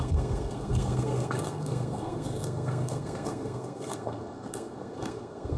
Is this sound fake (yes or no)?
yes